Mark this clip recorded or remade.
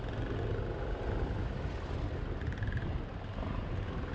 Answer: recorded